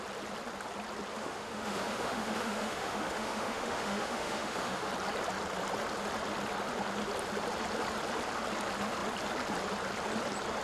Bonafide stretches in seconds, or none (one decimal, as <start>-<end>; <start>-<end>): 0.0-1.1; 4.9-10.6